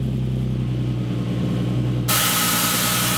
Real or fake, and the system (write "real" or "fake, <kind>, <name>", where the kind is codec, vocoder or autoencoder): real